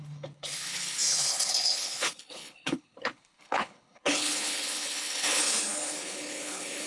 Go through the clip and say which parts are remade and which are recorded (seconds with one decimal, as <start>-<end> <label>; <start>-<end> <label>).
0.0-6.9 remade